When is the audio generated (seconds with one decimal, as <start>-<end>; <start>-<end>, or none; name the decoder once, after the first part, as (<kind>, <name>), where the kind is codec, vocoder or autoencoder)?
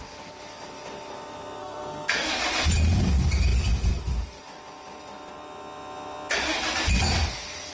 1.6-2.3 (codec, SNAC)